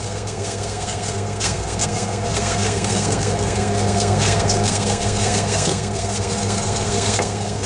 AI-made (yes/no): yes